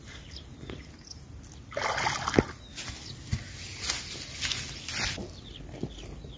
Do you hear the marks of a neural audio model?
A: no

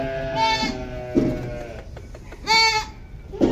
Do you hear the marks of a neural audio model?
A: no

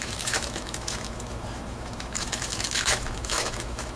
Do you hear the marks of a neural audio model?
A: yes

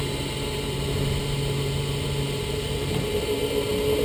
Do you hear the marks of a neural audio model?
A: no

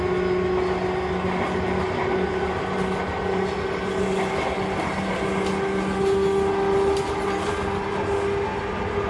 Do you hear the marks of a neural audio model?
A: no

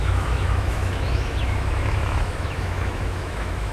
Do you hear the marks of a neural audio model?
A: yes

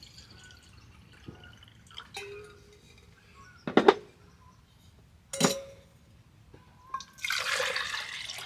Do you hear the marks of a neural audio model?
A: no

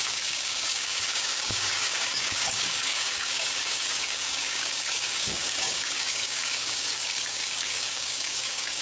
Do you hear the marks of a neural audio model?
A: yes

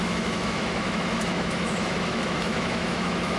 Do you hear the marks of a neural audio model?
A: yes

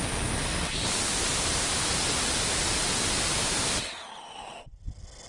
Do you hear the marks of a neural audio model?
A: no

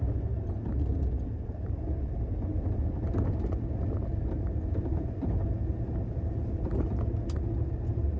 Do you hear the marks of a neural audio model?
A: no